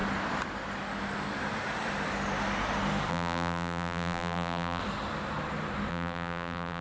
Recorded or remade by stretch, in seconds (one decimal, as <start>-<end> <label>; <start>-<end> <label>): 0.0-3.1 recorded; 3.1-4.8 remade; 4.8-5.9 recorded; 5.9-6.8 remade